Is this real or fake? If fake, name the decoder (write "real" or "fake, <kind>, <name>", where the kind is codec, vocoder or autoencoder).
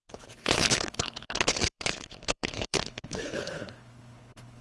fake, codec, HILCodec